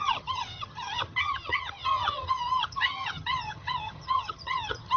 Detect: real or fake fake